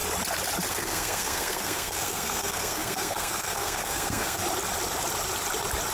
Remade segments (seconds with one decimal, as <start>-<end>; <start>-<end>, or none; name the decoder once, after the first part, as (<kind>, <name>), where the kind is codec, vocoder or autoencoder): 0.7-4.4 (codec, SNAC)